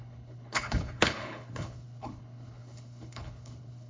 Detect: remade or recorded remade